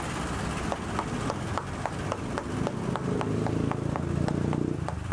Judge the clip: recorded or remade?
recorded